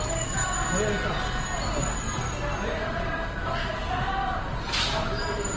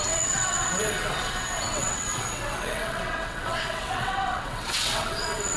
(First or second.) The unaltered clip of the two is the first